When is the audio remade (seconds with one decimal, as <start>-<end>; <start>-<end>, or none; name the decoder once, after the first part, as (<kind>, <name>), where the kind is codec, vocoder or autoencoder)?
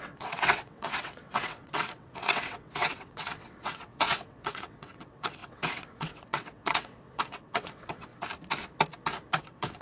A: 0.0-8.1 (vocoder, WaveNeXt); 9.3-9.8